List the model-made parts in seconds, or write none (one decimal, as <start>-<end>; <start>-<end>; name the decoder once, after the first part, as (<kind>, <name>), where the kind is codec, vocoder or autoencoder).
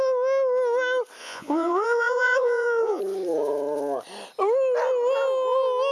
1.2-3.0 (vocoder, Vocos)